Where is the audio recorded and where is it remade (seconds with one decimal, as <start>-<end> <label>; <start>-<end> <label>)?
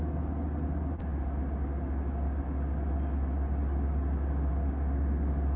0.0-5.6 recorded